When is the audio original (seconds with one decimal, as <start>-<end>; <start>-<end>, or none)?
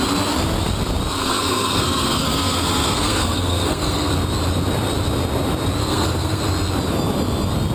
0.0-1.2; 4.1-5.8; 6.4-7.7